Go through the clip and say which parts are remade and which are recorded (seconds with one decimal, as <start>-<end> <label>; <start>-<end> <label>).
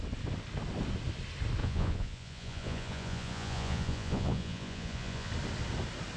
0.0-1.6 recorded; 1.6-5.3 remade; 5.3-6.2 recorded